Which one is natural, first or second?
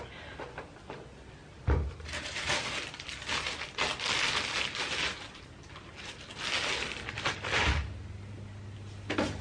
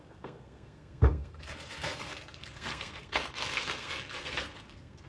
first